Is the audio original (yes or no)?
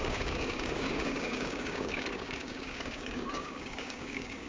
no